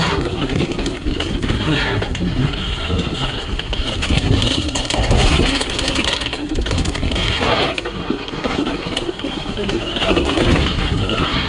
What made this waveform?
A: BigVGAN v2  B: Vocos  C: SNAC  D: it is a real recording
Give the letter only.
C